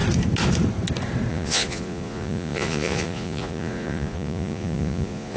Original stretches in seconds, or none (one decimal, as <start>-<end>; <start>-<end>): 0.0-1.3